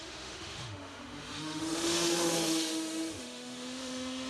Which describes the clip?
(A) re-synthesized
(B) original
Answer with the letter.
A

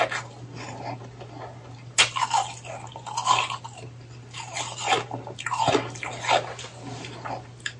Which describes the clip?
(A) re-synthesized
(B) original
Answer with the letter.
B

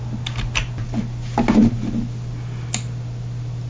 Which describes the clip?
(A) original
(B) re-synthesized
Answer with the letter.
A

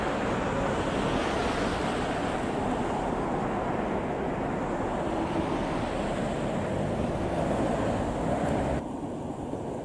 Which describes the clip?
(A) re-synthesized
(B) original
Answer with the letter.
B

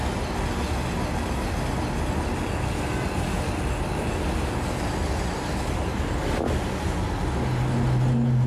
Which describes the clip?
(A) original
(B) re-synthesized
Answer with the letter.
A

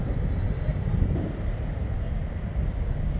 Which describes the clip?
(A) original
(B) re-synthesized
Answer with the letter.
A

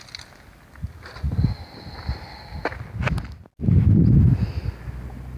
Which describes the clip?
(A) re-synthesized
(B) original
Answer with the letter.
B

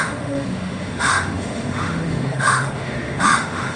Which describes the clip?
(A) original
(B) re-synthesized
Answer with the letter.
B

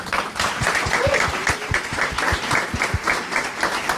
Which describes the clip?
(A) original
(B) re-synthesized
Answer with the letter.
A